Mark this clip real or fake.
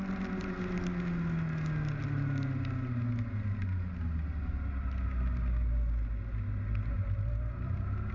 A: real